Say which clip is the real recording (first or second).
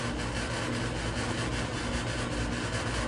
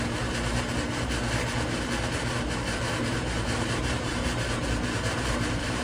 first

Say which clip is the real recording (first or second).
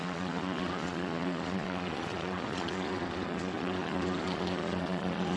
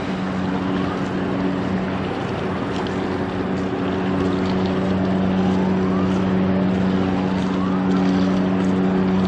second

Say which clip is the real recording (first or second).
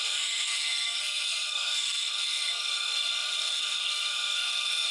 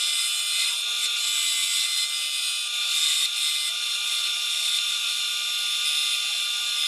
second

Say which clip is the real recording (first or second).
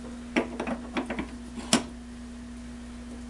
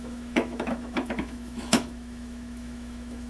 first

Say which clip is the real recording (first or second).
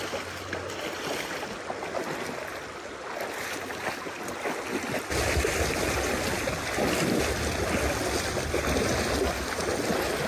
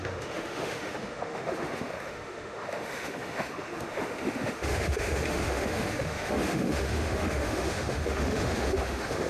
first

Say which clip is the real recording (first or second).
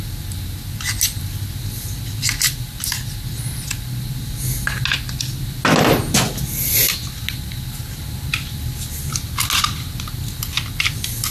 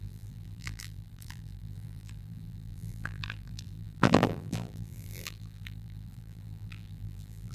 first